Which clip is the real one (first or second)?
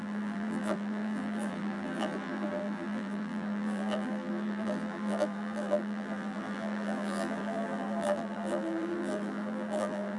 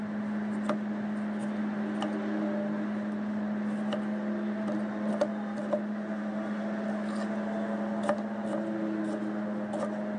second